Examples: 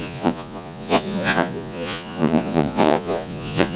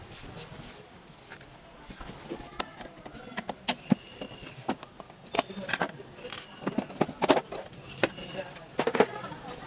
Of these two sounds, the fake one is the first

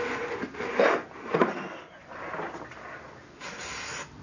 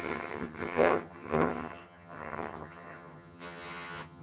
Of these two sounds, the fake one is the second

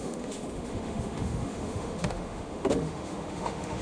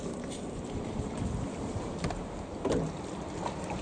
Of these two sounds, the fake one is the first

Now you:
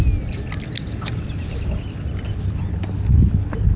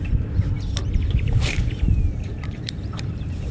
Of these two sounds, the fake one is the second